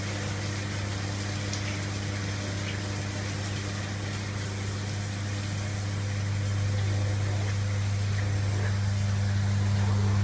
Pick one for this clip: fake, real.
real